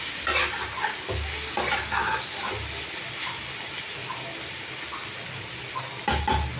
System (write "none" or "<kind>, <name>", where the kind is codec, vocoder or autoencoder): none